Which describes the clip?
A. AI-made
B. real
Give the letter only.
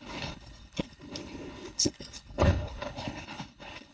A